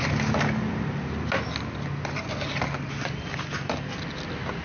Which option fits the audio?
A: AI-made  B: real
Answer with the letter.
B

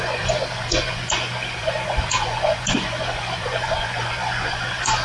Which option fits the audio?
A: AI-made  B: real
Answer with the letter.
A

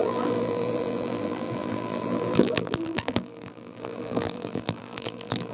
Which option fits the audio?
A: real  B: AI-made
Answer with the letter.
B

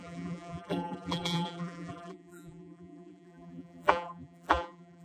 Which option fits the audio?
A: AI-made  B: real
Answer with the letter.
A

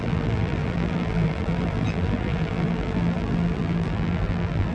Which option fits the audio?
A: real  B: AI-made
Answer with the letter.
B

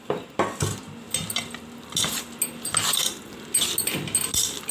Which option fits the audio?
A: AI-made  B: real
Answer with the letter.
B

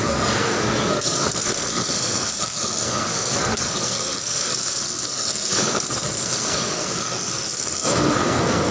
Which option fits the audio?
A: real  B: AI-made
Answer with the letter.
B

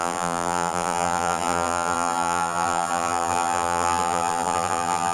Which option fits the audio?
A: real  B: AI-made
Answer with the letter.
B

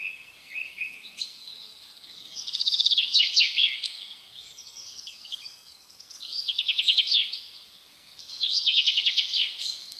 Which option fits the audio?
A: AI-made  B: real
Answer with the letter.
A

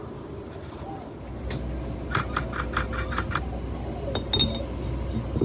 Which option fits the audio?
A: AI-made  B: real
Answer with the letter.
B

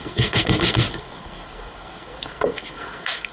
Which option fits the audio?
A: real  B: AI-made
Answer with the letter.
B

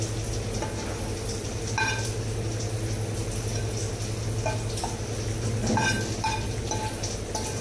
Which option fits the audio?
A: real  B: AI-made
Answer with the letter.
A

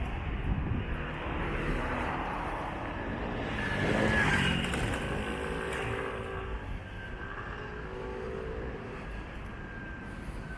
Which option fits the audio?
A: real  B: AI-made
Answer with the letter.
A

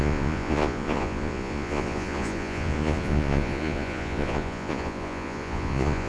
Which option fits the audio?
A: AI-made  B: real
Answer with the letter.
A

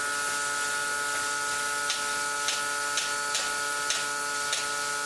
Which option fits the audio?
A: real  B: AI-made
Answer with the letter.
A